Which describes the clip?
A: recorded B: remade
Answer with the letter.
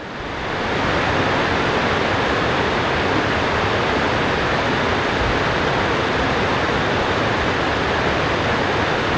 A